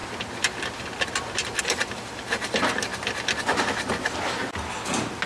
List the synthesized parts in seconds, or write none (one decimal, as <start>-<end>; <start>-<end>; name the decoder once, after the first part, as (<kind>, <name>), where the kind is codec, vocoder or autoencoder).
1.6-2.9 (vocoder, BigVGAN v2)